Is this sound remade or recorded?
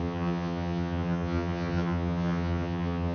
remade